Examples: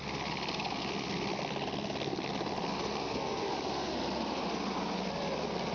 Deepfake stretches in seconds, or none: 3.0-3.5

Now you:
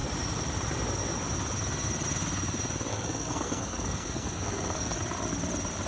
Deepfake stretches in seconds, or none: 2.9-5.0